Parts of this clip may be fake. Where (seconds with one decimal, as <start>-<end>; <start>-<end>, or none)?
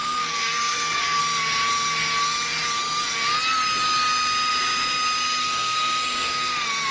0.0-1.2; 5.4-6.5